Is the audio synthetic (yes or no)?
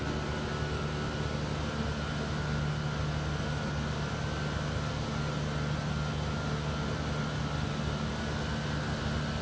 no